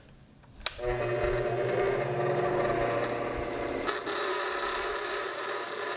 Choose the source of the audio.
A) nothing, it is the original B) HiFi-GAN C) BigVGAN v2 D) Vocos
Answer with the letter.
A